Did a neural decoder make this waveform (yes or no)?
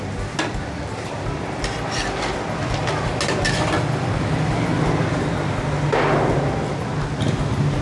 no